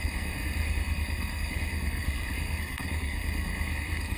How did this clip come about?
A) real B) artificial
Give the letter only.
B